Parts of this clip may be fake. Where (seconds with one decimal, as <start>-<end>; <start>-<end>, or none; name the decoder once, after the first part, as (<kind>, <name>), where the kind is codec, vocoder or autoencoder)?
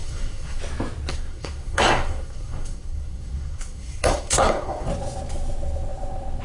0.0-0.6 (codec, SNAC); 1.1-4.9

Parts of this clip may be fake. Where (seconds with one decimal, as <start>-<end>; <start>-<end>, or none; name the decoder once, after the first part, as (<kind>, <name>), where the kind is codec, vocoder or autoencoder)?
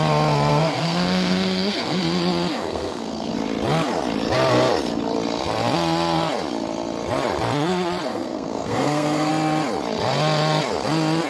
0.5-2.0 (codec, SNAC); 2.5-3.3; 8.1-9.3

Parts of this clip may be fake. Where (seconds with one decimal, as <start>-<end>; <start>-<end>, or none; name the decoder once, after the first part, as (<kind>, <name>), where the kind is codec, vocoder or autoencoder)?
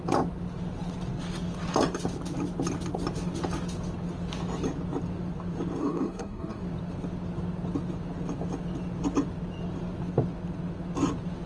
5.8-6.6 (codec, SNAC)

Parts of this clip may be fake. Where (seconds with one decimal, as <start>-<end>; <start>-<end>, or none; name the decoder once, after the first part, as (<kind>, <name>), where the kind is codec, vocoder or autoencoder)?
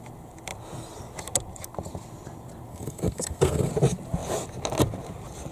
2.7-3.7 (codec, SNAC)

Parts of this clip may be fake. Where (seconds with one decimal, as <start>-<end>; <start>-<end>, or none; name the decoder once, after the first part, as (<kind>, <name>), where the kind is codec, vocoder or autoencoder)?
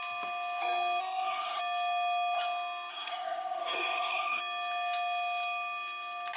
1.0-1.6 (codec, SNAC); 2.9-4.4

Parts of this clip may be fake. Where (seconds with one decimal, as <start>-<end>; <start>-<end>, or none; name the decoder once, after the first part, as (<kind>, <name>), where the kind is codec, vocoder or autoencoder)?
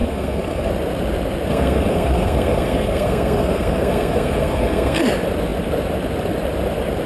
0.0-0.7 (codec, SNAC); 1.5-5.0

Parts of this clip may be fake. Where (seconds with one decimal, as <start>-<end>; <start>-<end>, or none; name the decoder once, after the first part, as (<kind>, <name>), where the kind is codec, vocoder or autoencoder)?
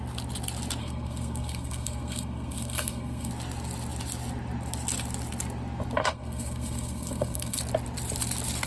0.8-3.3 (codec, SNAC); 6.0-7.6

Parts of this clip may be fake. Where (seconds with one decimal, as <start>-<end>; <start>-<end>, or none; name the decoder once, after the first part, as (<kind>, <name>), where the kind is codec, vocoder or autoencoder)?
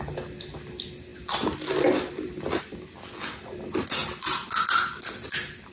none